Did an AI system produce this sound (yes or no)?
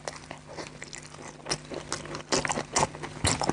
no